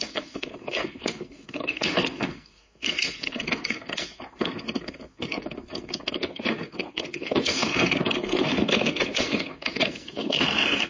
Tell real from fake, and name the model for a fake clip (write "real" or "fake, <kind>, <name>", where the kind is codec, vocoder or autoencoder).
fake, codec, SNAC